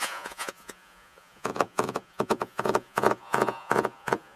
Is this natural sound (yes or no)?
no